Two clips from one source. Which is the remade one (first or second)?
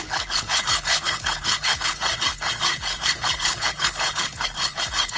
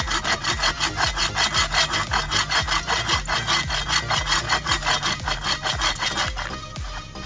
first